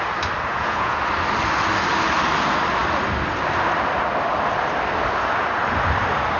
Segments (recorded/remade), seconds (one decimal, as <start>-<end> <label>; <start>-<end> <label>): 0.0-0.5 recorded; 0.5-1.0 remade; 1.0-6.4 recorded